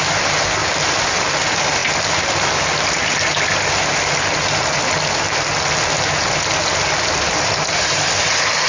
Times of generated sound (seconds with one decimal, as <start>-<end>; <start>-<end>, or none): none